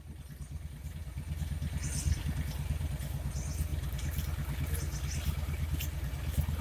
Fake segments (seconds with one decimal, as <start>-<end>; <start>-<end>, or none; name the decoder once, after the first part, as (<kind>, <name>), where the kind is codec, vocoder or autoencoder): none